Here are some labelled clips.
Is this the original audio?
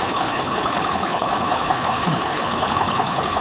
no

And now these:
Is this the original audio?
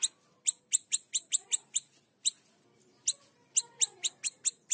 yes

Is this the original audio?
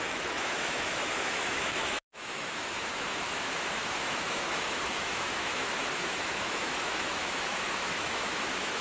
no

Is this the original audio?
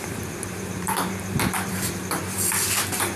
no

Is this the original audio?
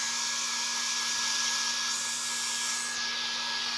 yes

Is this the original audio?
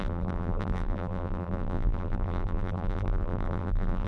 no